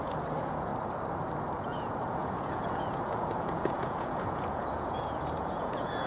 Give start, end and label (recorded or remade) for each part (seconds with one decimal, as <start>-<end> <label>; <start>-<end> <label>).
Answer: 0.0-0.7 remade; 0.7-1.6 recorded; 1.6-6.1 remade